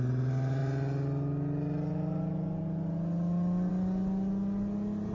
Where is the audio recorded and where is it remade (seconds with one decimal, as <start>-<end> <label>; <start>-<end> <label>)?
0.0-5.1 recorded